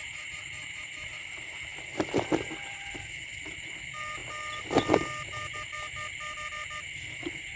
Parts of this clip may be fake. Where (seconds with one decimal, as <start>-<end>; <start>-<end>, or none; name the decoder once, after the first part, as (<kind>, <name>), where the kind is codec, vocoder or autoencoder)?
none

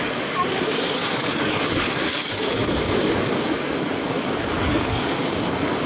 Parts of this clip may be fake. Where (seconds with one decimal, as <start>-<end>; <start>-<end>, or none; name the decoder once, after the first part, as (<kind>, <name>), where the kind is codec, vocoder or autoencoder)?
0.0-5.9 (codec, DAC)

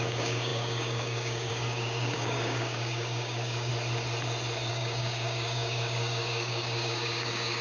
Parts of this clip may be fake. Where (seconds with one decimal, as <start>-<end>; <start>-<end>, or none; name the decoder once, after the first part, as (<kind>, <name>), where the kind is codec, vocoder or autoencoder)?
0.0-3.7 (codec, DAC); 4.7-7.6

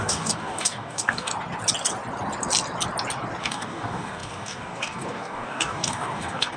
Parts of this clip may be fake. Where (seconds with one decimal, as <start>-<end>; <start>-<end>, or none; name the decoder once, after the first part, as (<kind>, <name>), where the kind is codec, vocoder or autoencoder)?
0.0-1.3 (codec, DAC); 3.4-6.6

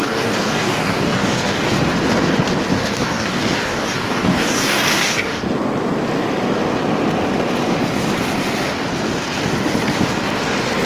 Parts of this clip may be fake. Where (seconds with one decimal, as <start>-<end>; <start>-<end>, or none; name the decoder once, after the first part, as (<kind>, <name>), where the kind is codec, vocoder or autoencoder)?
0.0-1.7 (codec, DAC); 2.7-5.4